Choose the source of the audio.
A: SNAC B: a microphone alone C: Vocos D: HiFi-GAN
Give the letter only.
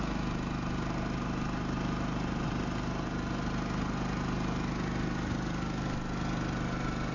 B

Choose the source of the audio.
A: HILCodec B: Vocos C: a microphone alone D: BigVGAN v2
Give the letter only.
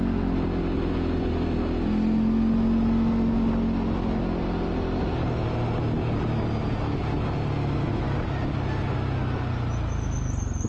C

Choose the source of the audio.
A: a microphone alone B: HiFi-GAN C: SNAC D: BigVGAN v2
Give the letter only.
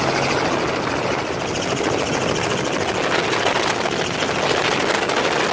A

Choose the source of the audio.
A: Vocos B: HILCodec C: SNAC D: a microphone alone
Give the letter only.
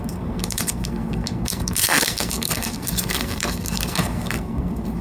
C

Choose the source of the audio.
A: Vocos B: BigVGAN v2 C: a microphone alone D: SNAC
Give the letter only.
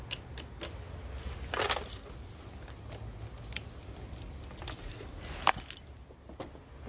C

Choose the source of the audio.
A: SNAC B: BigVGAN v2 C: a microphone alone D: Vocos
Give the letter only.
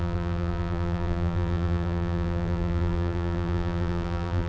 B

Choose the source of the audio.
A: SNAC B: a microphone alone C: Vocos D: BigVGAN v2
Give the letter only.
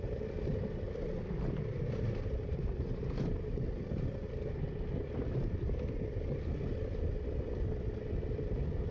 B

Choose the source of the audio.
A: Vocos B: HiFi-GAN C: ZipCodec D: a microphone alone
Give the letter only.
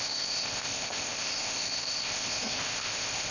C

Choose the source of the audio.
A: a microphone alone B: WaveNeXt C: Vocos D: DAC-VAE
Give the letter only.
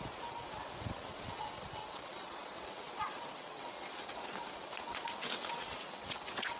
B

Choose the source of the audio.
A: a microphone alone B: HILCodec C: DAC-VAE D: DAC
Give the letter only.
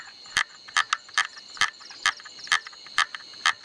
A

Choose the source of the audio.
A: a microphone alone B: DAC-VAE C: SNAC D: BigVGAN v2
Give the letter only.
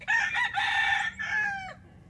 A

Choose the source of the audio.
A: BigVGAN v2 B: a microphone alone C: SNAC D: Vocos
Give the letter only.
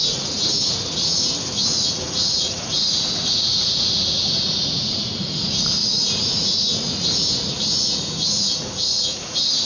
D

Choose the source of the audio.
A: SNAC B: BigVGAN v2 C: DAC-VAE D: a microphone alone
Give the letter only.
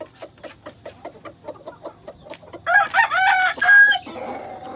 D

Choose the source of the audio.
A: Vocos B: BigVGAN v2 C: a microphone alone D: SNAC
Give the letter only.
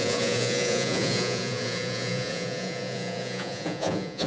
A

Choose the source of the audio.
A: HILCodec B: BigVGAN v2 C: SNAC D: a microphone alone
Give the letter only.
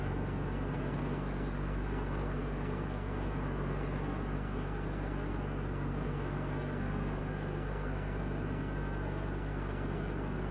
C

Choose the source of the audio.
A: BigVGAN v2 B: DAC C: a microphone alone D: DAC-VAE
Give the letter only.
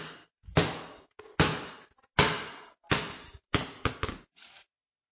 C